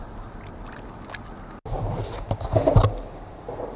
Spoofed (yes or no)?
no